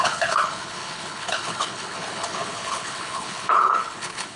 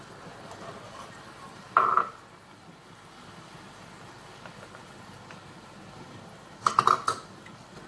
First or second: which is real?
second